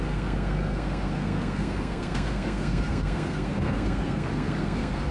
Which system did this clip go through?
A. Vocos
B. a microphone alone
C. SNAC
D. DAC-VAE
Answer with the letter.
C